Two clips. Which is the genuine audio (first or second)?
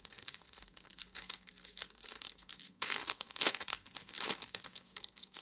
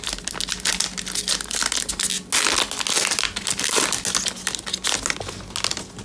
second